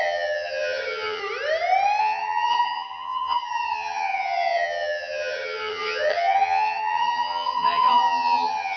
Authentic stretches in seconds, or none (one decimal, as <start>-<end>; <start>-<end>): 1.2-2.0